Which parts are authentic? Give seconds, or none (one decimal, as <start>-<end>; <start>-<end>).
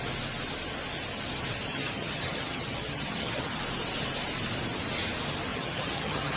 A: 0.0-1.7; 3.6-5.5